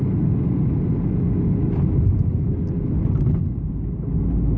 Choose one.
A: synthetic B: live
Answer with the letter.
B